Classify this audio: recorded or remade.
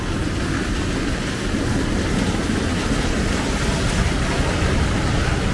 recorded